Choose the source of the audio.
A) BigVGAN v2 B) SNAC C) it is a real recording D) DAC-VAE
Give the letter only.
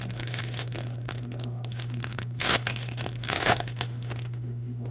D